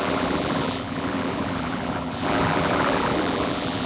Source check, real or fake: fake